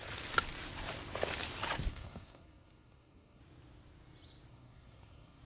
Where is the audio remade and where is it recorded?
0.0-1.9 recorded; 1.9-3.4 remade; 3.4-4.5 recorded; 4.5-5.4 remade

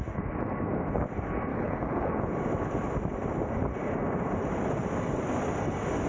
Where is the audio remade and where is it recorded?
0.0-1.5 recorded; 1.5-2.1 remade; 2.1-6.1 recorded

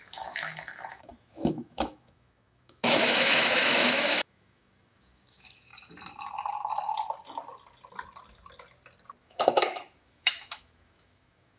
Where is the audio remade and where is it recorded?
0.0-5.7 remade; 5.7-9.2 recorded; 9.2-11.6 remade

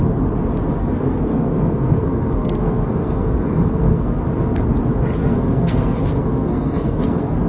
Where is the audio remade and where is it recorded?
0.0-0.8 recorded; 0.8-4.6 remade; 4.6-5.2 recorded; 5.2-7.5 remade

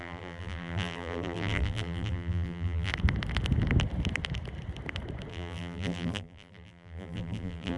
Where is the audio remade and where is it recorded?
0.0-2.9 remade; 2.9-5.3 recorded; 5.3-7.8 remade